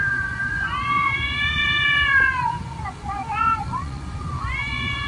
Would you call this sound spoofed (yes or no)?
yes